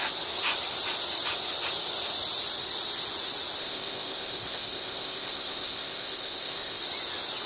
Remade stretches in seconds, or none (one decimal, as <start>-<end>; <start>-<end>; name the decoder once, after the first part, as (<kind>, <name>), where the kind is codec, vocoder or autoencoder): 3.6-6.8 (codec, ZipCodec)